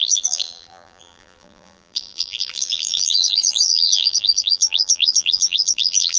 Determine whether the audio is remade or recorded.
remade